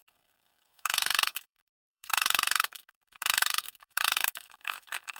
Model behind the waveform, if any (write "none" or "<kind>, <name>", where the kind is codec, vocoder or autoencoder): codec, SNAC